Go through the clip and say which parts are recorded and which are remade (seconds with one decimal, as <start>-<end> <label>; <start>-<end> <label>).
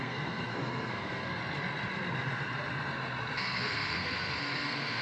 0.0-1.4 remade; 1.4-3.4 recorded; 3.4-5.0 remade